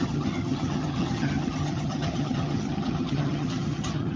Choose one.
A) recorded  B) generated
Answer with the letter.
B